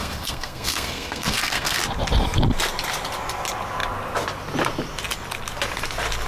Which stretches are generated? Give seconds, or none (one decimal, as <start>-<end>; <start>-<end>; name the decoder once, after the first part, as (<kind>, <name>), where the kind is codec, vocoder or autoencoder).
0.0-1.8 (codec, SNAC)

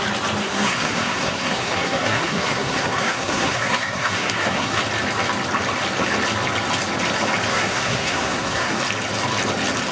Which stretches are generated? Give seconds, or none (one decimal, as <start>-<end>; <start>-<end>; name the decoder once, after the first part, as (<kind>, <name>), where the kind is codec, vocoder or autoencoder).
0.4-4.8 (codec, SNAC); 7.5-8.8

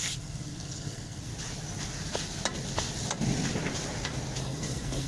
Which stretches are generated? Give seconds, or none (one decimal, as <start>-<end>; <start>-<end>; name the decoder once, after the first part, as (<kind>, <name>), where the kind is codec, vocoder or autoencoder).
0.0-1.3 (codec, SNAC); 4.4-5.1

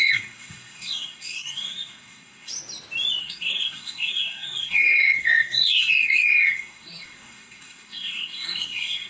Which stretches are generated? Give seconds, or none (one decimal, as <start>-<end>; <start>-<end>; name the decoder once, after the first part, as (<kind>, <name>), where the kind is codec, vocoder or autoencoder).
0.0-2.5 (codec, SNAC); 3.2-9.1

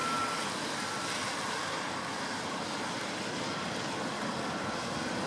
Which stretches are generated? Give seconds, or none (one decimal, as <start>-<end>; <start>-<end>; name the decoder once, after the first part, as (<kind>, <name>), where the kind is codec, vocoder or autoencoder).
none

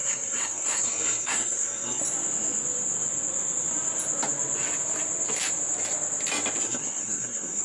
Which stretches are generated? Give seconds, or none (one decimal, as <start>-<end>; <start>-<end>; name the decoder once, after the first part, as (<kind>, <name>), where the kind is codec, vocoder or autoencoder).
0.0-2.0 (codec, SNAC); 6.6-7.6

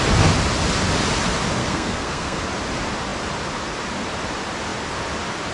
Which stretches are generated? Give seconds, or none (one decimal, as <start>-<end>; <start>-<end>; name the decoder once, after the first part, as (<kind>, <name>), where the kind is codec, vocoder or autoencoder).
1.6-2.4 (codec, SNAC)

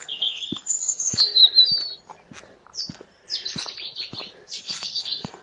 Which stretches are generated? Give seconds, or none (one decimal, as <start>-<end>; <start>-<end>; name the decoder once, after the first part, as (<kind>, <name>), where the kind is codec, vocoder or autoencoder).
0.0-1.4 (codec, SNAC); 4.6-5.4